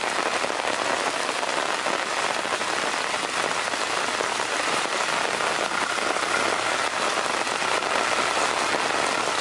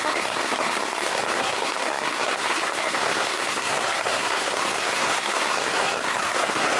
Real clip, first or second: first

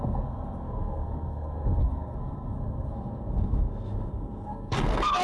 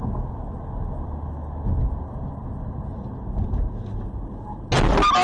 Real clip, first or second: second